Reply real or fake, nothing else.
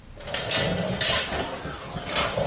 real